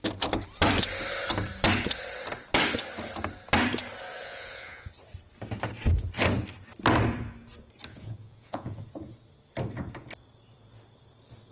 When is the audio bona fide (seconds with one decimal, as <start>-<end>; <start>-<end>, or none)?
0.0-4.2; 4.9-7.9; 8.8-11.5